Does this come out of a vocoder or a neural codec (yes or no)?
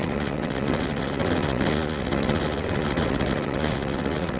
yes